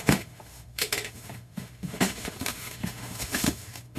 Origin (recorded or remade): remade